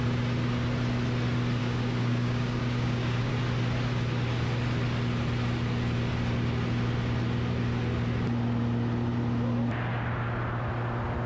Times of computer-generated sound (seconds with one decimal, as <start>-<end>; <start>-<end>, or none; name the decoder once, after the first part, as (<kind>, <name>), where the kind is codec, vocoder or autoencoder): 1.6-3.3 (codec, DAC)

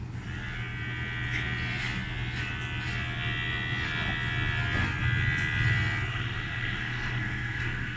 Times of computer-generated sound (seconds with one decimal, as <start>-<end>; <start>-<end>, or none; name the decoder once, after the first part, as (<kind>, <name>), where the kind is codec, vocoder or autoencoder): 6.1-8.0 (codec, SNAC)